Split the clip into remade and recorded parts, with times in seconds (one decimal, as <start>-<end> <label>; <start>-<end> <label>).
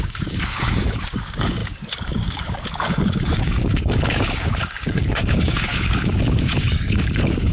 0.0-7.5 remade